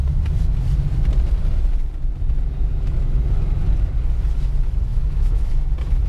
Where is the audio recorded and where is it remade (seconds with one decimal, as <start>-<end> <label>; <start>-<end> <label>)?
0.0-4.9 recorded; 4.9-5.5 remade; 5.5-6.1 recorded